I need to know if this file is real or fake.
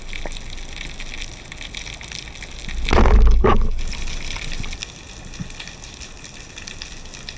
real